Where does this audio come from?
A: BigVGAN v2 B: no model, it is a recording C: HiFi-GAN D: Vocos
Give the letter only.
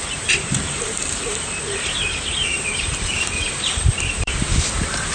A